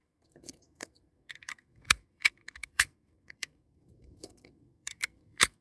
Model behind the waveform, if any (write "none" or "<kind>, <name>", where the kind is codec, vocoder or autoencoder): codec, SNAC